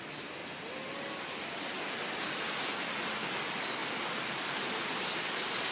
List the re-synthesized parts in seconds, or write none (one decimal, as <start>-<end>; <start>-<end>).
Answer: none